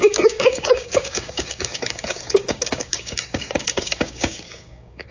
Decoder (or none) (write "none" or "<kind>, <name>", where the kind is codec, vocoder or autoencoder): codec, DAC